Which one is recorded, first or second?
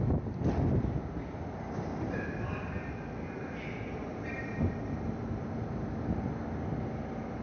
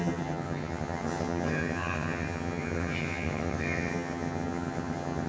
first